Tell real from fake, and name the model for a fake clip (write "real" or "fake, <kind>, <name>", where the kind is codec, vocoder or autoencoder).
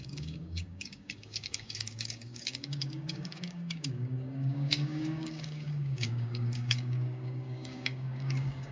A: fake, codec, DAC